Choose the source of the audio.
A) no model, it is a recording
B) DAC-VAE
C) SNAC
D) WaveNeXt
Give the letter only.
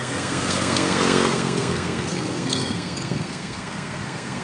C